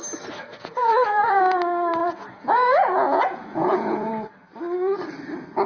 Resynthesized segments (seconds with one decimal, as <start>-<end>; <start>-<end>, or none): 0.5-1.4; 2.0-4.1